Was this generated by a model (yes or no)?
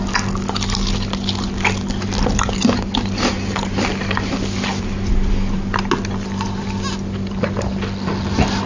no